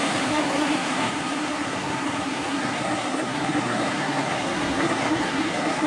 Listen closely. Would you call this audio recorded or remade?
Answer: remade